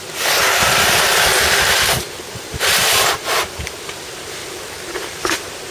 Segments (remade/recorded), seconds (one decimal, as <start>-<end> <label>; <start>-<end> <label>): 0.0-4.4 remade; 4.4-4.9 recorded; 4.9-5.7 remade